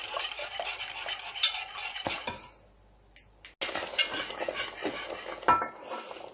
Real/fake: real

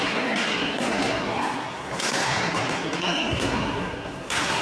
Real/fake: fake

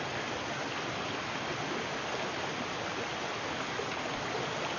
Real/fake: real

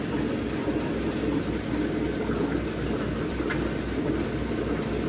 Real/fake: real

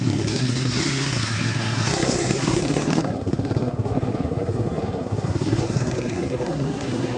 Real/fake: fake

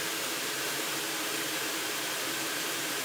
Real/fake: fake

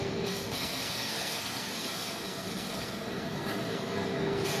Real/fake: fake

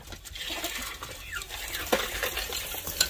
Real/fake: real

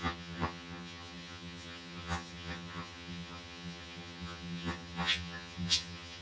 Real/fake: fake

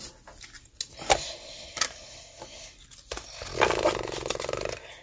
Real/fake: real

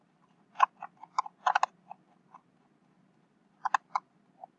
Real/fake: real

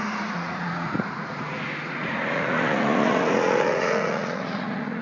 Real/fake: fake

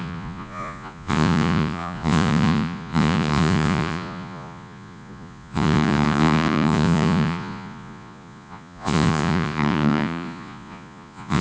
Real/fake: fake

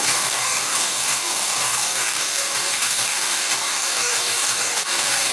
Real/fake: fake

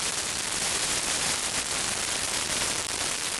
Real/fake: fake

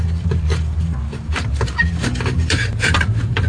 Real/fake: fake